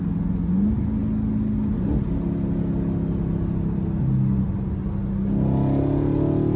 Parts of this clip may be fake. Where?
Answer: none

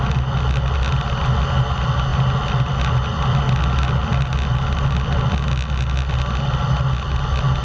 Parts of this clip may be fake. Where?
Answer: none

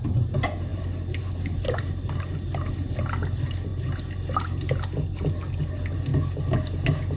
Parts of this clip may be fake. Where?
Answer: none

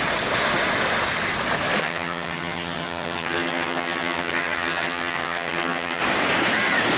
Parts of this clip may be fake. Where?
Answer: 1.8-6.0 (vocoder, HiFi-GAN)

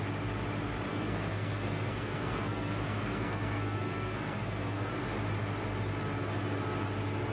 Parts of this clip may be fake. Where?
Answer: 0.9-4.9 (codec, SNAC)

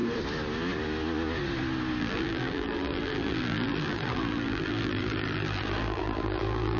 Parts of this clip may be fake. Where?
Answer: 2.0-6.8 (vocoder, BigVGAN v2)